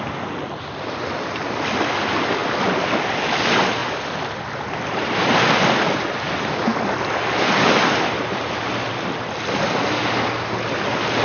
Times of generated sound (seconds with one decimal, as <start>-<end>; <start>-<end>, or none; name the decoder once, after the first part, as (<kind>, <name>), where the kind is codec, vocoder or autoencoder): none